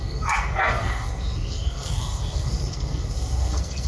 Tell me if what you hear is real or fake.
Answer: fake